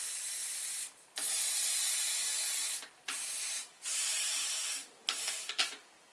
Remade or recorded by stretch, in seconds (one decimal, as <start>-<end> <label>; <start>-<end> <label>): 0.0-0.4 recorded; 0.4-1.9 remade; 1.9-2.3 recorded; 2.3-5.6 remade; 5.6-6.1 recorded